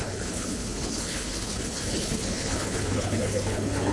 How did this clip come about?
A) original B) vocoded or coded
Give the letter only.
B